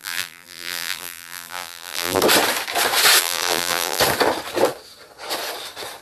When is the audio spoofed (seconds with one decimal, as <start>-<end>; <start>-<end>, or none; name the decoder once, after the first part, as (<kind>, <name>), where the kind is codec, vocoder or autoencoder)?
0.0-2.2 (vocoder, BigVGAN v2); 3.2-4.0